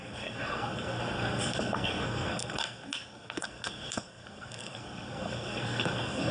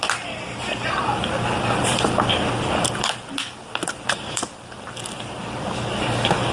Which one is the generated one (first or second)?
first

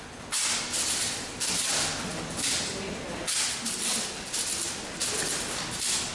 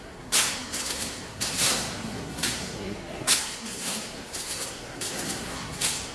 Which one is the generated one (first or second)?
second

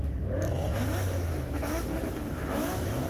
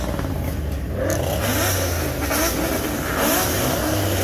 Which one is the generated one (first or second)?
first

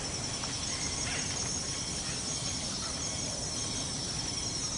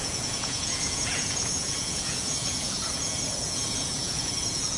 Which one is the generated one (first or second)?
second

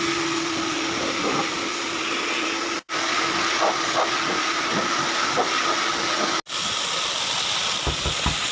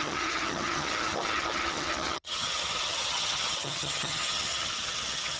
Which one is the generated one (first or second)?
second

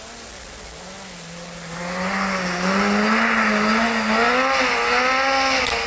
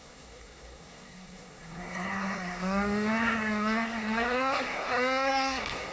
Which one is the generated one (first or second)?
second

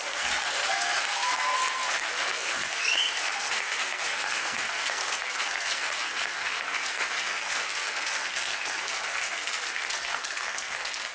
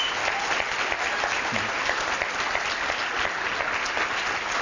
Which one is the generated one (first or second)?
first